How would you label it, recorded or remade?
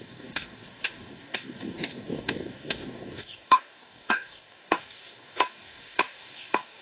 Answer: remade